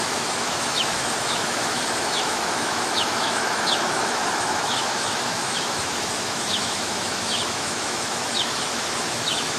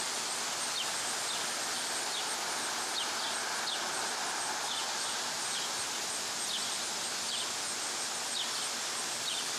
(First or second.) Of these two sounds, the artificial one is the first